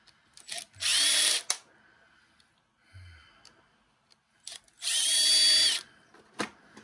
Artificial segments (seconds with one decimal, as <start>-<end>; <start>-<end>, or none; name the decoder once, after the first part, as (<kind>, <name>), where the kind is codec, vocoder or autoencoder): none